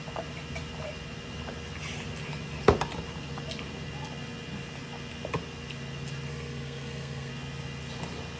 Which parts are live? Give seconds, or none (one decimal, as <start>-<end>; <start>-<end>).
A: 0.0-6.3; 7.3-8.4